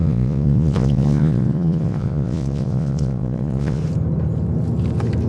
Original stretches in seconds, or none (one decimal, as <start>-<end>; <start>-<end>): 3.8-5.3